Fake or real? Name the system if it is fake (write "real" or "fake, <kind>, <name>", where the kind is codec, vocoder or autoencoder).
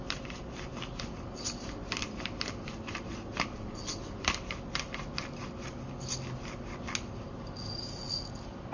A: real